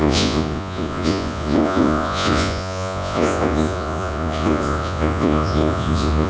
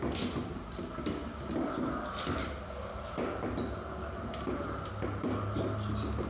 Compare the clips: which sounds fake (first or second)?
first